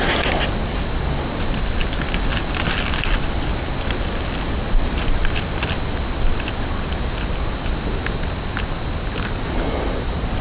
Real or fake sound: real